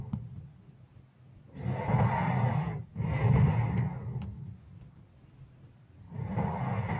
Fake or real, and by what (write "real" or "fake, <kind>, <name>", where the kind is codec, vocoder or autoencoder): real